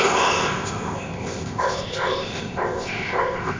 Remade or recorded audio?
remade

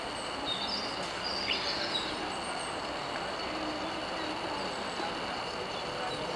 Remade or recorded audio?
recorded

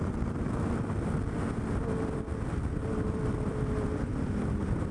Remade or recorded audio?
remade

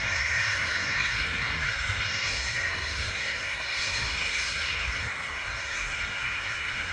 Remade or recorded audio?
remade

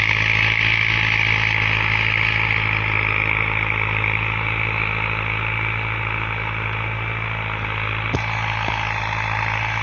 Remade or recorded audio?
recorded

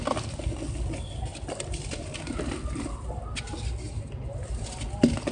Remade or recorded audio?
recorded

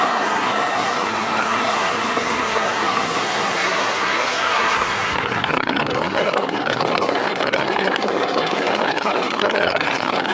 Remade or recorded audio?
remade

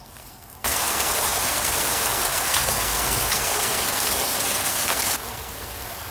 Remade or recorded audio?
remade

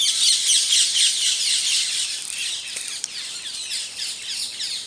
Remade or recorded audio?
recorded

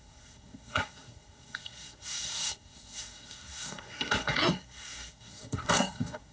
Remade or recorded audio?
remade